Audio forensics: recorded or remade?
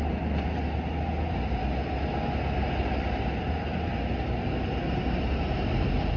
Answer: recorded